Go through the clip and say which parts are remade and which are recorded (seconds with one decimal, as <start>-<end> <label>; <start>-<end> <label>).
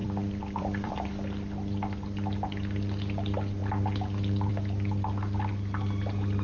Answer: 0.0-0.9 remade; 0.9-6.4 recorded